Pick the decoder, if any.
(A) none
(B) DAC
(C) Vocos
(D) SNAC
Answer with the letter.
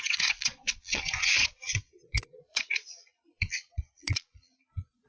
C